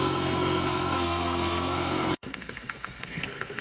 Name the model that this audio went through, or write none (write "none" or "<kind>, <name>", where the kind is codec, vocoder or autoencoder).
codec, SNAC